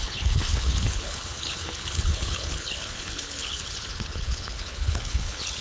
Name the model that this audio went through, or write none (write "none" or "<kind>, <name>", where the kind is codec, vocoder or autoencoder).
codec, HILCodec